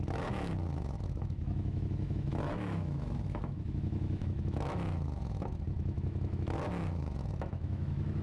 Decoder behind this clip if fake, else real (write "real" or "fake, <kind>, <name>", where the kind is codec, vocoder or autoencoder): fake, autoencoder, DAC-VAE